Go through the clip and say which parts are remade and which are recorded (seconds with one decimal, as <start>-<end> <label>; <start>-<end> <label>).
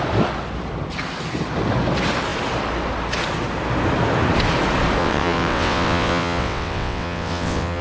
0.0-5.0 recorded; 5.0-7.8 remade